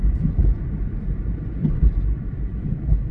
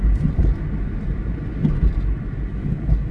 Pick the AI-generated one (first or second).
first